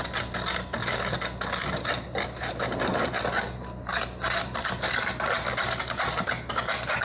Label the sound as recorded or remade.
recorded